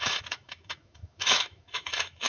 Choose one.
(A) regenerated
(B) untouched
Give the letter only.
A